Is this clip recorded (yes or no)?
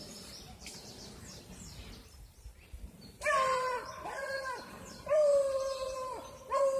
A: no